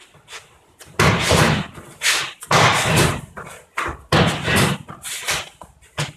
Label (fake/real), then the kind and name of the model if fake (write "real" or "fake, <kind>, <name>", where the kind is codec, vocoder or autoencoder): real